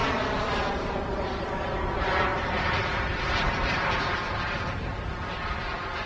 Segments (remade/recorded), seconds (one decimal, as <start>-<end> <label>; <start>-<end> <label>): 0.0-0.7 recorded; 0.7-6.1 remade